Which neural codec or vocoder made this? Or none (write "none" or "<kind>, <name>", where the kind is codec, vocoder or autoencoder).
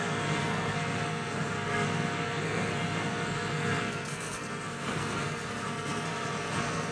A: codec, SNAC